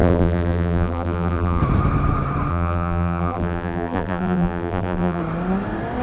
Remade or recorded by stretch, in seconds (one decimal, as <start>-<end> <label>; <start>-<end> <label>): 0.0-1.6 remade; 1.6-2.5 recorded; 2.5-5.2 remade; 5.2-6.0 recorded